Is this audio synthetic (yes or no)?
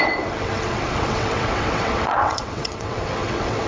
yes